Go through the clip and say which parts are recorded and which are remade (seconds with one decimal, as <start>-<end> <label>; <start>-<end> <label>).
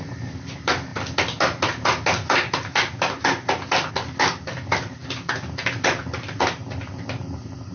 0.0-7.7 recorded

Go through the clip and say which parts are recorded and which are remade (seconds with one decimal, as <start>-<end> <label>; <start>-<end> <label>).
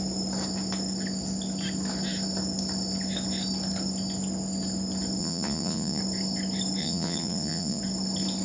0.0-5.2 recorded; 5.2-6.0 remade; 6.0-6.8 recorded; 6.8-7.8 remade; 7.8-8.4 recorded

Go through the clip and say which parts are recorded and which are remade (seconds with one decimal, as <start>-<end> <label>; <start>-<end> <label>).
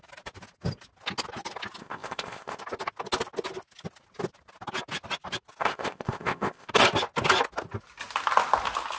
0.0-1.8 recorded; 1.8-2.6 remade; 2.6-5.6 recorded; 5.6-6.7 remade; 6.7-9.0 recorded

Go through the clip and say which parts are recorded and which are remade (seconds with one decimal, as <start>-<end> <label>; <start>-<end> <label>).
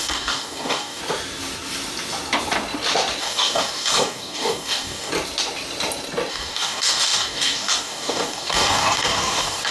0.0-1.0 remade; 1.0-3.2 recorded; 3.2-5.1 remade; 5.1-6.3 recorded; 6.3-9.7 remade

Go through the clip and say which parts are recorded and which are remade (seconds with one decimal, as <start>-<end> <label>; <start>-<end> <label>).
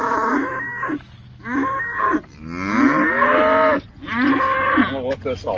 0.0-1.9 remade; 1.9-5.6 recorded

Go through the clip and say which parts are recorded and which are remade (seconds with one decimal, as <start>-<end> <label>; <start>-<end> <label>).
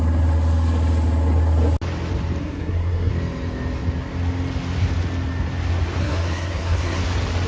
0.0-2.4 recorded; 2.4-3.1 remade; 3.1-6.0 recorded; 6.0-7.0 remade; 7.0-7.5 recorded